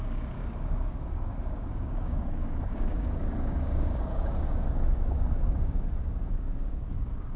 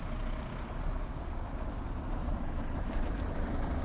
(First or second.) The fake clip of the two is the first